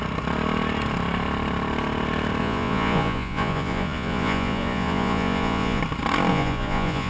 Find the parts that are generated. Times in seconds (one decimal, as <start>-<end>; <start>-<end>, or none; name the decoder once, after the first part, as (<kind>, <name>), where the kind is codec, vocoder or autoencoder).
2.4-5.8 (vocoder, Vocos); 6.3-7.1